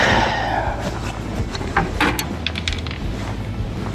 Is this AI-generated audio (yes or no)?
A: no